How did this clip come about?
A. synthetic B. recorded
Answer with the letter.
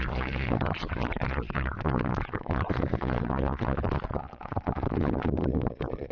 A